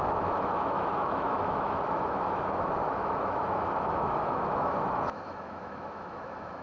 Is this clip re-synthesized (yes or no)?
yes